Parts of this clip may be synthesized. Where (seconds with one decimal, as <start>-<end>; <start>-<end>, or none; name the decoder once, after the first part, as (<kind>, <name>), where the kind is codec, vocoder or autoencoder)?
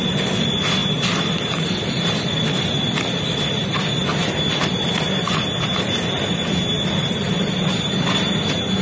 none